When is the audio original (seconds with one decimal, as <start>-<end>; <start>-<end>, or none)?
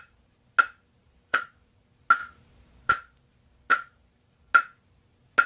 0.0-1.0; 1.8-2.2; 2.9-3.7; 4.5-5.5